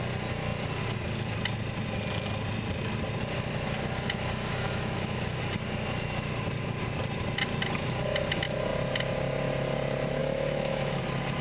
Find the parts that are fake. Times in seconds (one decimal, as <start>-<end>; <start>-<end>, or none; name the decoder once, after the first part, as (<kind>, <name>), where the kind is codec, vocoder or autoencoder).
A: 4.5-5.4 (autoencoder, DAC-VAE); 10.2-11.0